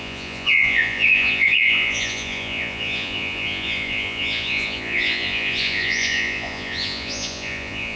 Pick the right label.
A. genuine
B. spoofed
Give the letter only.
B